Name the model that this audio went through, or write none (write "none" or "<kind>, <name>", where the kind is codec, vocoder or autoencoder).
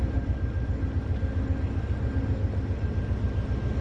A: none